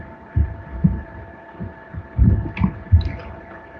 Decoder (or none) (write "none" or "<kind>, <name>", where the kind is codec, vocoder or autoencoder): vocoder, BigVGAN v2